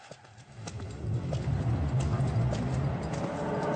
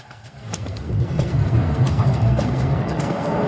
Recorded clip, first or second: first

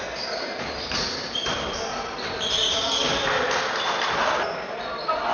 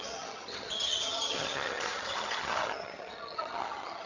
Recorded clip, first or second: first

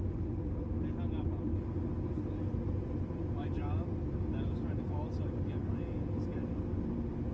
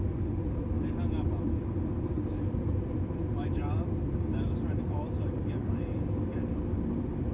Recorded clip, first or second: first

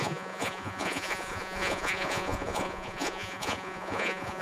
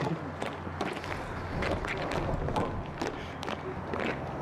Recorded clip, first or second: second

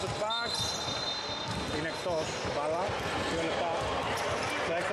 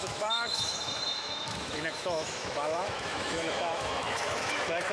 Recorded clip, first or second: first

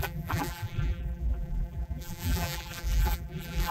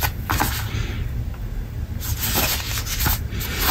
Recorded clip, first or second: second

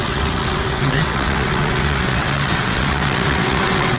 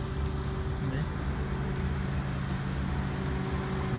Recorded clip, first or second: second